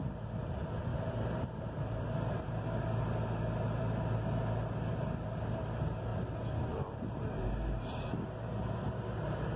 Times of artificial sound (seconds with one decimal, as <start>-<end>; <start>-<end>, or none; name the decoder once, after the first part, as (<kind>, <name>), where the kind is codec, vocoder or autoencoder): 0.9-2.6 (vocoder, BigVGAN v2)

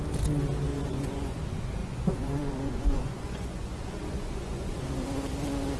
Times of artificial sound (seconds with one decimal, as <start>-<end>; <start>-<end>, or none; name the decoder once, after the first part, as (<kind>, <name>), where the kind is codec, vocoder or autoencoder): 0.7-1.4 (vocoder, Vocos); 1.8-4.8

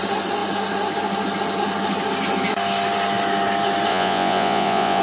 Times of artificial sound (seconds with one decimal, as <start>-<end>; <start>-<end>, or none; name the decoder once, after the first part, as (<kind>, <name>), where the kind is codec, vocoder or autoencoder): 3.9-5.0 (vocoder, Vocos)

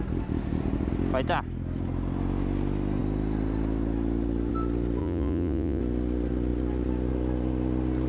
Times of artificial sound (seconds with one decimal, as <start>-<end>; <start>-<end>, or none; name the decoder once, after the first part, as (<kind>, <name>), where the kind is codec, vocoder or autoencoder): 5.0-5.8 (vocoder, Vocos)

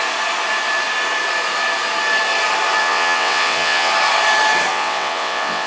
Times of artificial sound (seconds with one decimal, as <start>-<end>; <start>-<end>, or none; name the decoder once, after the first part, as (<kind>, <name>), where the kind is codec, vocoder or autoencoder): 2.8-3.9 (vocoder, WaveNeXt); 4.7-5.7

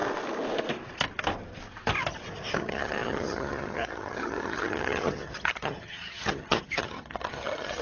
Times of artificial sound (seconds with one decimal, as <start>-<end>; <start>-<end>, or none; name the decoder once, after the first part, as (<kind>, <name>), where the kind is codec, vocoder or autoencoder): 2.5-7.8 (vocoder, HiFi-GAN)

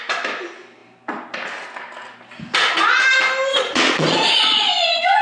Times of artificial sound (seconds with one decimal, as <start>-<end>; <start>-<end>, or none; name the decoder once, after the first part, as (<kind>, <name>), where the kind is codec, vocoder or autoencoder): 3.5-5.2 (vocoder, Vocos)

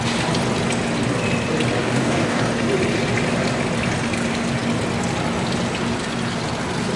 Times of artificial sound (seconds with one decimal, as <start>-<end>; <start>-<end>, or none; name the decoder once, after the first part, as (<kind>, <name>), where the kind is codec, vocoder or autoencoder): 1.8-2.4 (codec, DAC)